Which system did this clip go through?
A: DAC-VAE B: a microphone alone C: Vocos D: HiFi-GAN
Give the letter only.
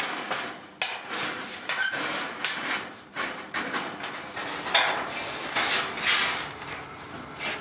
B